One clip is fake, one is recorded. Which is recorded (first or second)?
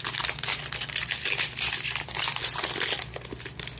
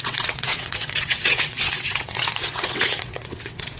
first